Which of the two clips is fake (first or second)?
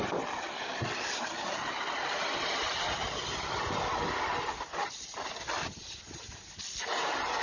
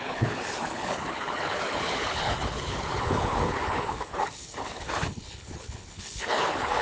second